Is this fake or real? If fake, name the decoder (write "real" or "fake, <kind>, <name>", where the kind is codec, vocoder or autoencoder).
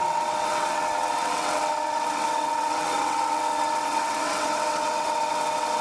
fake, vocoder, WaveNeXt